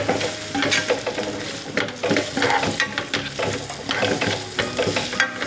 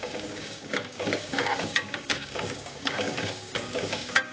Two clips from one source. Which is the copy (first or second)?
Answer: second